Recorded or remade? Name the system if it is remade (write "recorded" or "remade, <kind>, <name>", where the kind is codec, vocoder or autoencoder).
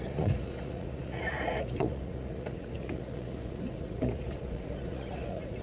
remade, vocoder, Vocos